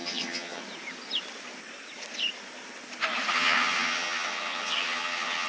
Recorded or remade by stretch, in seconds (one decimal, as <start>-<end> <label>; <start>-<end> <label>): 0.0-0.6 remade; 0.6-3.3 recorded; 3.3-5.5 remade